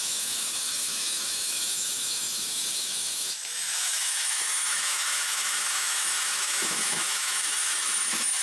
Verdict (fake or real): fake